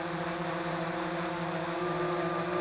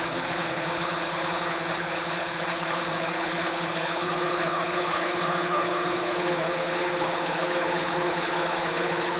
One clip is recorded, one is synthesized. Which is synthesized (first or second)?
second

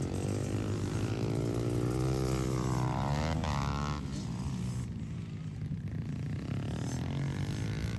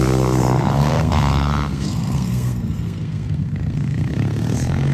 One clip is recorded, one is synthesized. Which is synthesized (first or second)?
second